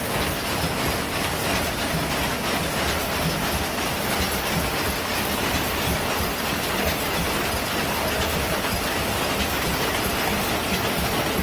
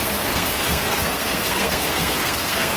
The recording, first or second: first